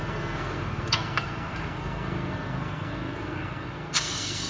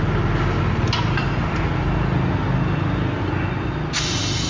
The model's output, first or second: first